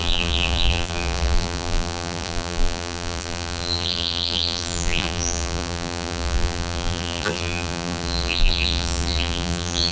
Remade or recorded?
remade